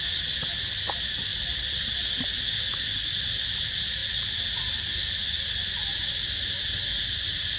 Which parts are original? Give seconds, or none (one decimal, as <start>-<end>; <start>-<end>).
0.0-1.3; 2.6-7.6